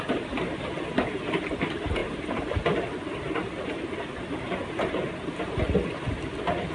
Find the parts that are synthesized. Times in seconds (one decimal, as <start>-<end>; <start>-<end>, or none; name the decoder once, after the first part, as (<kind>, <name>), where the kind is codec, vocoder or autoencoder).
none